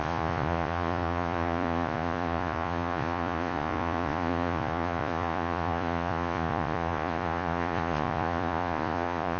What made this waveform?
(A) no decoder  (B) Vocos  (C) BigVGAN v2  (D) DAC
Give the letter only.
B